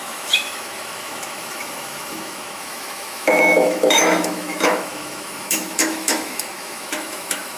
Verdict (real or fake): fake